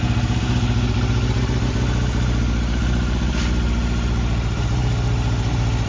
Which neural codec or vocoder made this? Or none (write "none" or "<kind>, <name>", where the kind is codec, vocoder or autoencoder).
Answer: none